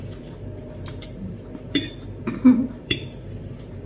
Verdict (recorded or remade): remade